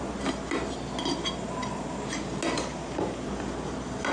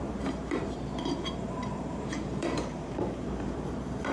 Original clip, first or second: first